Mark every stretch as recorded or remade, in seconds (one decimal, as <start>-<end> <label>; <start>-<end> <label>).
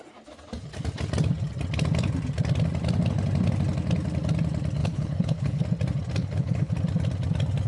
0.0-4.8 recorded; 4.8-5.6 remade; 5.6-6.2 recorded; 6.2-6.7 remade; 6.7-7.7 recorded